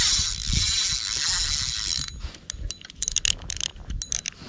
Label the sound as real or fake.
real